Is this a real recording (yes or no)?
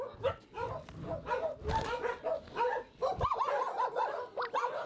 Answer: yes